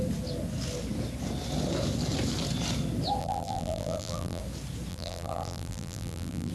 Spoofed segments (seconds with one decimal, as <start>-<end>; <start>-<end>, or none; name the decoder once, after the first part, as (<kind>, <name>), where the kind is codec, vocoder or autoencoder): 3.2-4.4 (vocoder, BigVGAN v2); 4.9-6.5